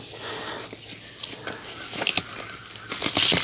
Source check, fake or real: real